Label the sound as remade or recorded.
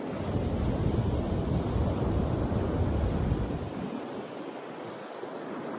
recorded